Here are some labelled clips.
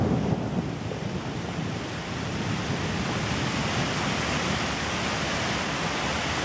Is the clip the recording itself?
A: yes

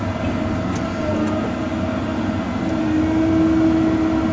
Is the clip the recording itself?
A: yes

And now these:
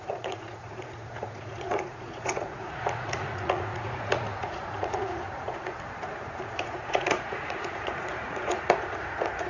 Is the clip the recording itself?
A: no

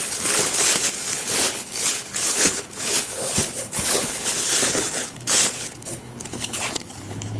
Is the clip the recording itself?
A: no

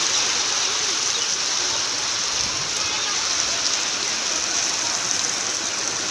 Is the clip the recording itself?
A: yes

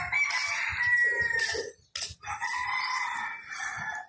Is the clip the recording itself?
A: yes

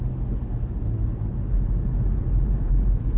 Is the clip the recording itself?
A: yes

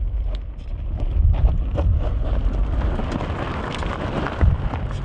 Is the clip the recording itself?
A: yes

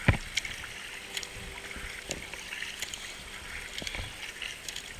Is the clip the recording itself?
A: yes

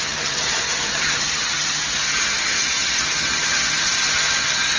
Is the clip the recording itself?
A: no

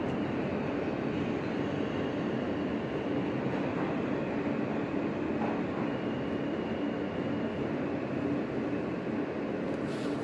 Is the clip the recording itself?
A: yes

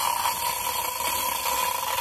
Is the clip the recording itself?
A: yes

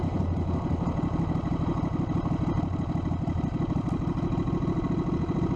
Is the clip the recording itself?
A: yes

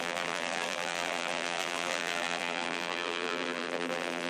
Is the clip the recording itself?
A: no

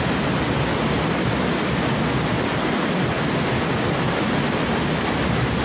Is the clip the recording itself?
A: yes